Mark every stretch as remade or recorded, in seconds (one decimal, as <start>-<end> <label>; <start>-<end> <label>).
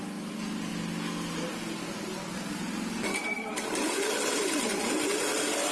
0.0-5.7 recorded